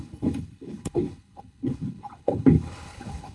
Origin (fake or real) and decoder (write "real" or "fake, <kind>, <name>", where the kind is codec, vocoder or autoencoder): fake, codec, HILCodec